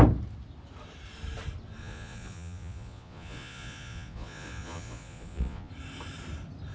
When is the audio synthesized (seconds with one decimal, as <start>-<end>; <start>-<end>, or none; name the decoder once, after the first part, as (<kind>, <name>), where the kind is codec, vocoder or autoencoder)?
1.8-5.7 (vocoder, Vocos)